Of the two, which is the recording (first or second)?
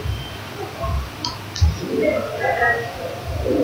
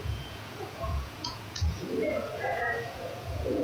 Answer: first